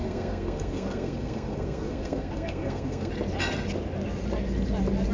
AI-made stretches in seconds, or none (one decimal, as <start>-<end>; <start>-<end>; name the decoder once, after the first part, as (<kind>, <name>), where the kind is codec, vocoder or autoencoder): 0.0-3.1 (codec, SNAC)